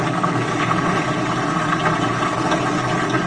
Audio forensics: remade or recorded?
recorded